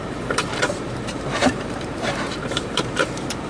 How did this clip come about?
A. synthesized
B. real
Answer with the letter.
A